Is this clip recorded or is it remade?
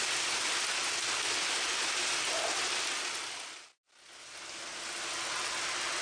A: recorded